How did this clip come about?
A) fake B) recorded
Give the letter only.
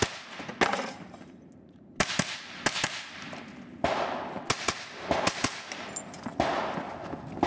B